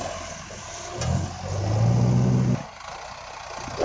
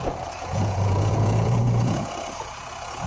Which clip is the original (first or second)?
first